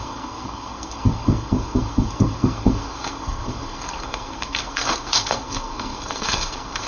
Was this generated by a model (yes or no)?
yes